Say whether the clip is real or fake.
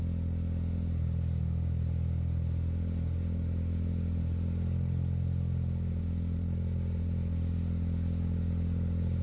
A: real